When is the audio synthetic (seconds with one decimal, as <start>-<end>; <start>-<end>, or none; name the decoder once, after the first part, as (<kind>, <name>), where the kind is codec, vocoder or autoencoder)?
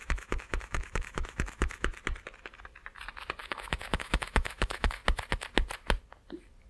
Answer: 0.0-1.9 (autoencoder, DAC-VAE); 3.4-5.0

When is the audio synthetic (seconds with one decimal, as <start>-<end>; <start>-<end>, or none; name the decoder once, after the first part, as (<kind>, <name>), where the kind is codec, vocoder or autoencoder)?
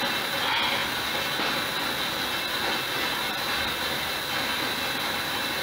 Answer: none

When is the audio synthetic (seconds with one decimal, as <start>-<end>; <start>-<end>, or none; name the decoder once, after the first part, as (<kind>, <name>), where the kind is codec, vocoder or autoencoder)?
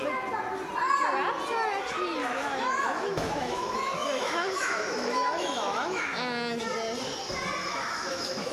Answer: 2.2-6.6 (autoencoder, DAC-VAE); 7.6-8.5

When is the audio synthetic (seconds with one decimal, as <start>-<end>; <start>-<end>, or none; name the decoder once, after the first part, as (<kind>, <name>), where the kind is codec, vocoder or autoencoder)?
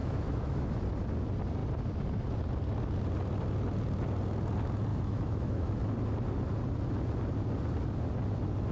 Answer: 0.0-0.6 (autoencoder, DAC-VAE); 4.9-5.7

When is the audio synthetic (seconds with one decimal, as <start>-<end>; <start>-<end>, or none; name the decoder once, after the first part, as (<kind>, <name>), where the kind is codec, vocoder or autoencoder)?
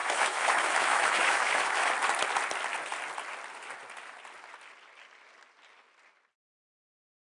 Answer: 0.0-1.9 (autoencoder, DAC-VAE)